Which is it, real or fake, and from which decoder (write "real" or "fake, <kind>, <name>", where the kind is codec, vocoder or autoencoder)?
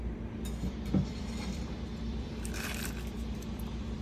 fake, vocoder, BigVGAN v2